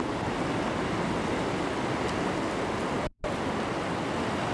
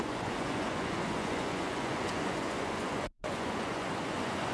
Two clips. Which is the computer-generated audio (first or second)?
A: second